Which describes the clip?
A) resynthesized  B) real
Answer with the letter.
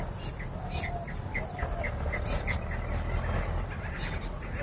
B